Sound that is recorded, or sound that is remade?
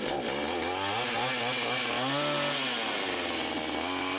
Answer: recorded